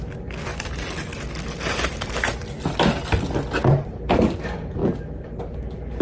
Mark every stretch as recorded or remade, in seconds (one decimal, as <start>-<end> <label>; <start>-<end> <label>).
0.0-6.0 recorded